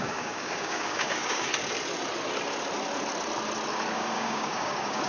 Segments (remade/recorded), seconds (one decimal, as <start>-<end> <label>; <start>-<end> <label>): 0.0-1.5 remade; 1.5-3.9 recorded; 3.9-5.1 remade